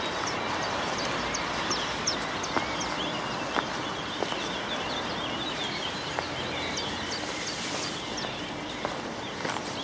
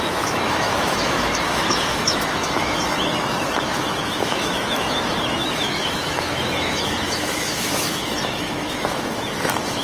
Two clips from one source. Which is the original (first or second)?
first